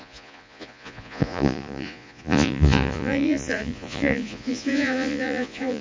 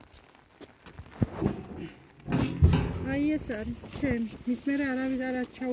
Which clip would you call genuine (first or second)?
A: second